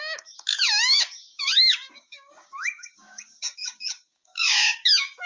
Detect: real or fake fake